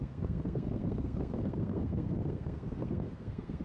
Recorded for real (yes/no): no